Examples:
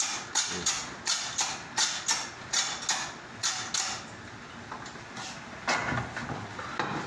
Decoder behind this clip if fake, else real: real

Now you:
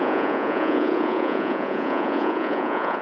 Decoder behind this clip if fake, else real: fake, vocoder, Vocos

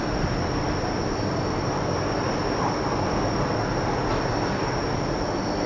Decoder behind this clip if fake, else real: real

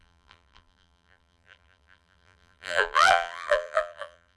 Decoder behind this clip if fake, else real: fake, vocoder, BigVGAN v2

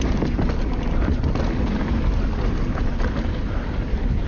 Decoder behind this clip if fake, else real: real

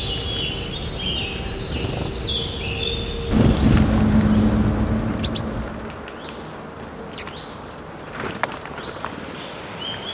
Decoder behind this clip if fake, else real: real